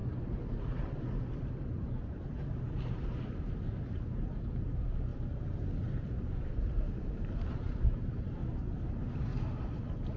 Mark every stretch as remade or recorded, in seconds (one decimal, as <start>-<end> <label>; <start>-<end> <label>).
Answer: 0.0-5.1 remade; 5.1-5.8 recorded; 5.8-8.4 remade; 8.4-8.9 recorded; 8.9-9.3 remade; 9.3-10.2 recorded